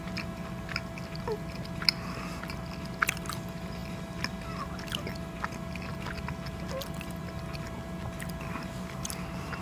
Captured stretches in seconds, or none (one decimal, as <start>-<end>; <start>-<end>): 0.0-9.6